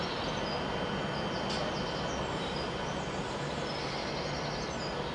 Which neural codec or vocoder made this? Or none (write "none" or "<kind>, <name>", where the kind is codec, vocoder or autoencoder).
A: none